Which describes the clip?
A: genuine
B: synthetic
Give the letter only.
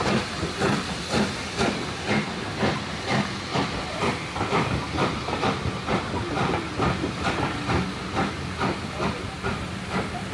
A